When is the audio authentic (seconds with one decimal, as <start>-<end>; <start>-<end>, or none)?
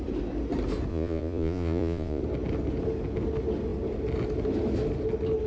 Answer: 0.0-0.9; 2.2-5.5